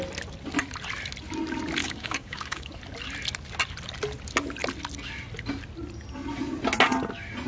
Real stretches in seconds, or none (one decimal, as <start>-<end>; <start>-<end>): 0.0-1.8; 2.7-7.5